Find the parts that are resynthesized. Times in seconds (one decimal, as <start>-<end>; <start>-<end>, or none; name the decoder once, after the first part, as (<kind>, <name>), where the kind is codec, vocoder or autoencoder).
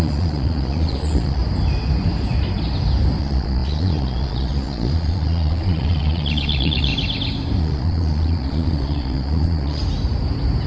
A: 0.0-1.4 (vocoder, Vocos); 3.2-6.9; 7.6-9.8